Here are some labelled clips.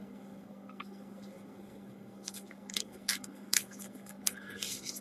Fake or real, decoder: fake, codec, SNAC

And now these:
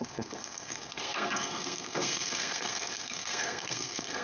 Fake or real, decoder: fake, codec, SNAC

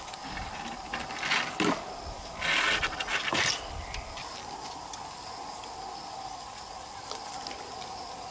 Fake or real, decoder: real